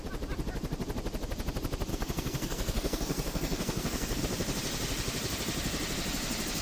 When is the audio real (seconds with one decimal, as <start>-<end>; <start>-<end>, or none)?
0.0-1.9; 4.2-6.6